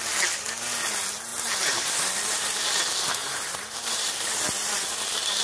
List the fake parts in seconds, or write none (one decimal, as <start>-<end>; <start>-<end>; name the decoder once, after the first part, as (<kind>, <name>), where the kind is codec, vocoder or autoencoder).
1.3-2.8 (vocoder, BigVGAN v2); 3.2-4.9